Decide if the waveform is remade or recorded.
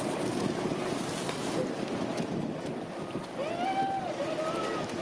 recorded